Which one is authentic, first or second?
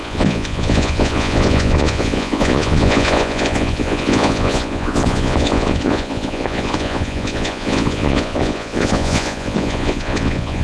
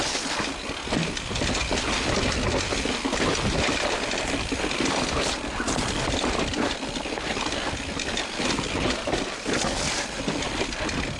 second